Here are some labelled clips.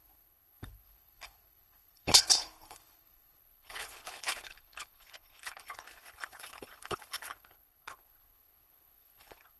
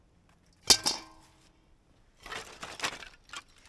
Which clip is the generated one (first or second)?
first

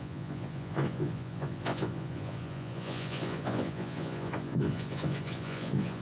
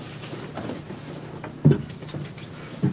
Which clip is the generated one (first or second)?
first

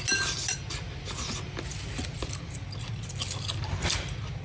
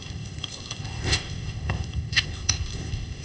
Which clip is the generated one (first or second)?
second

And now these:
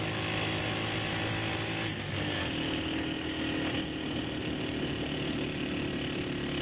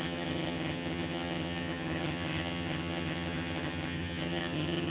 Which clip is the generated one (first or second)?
second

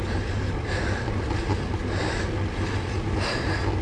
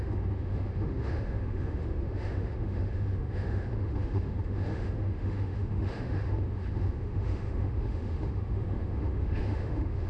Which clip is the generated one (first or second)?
second